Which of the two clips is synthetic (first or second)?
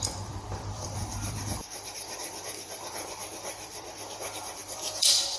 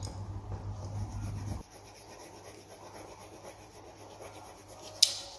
first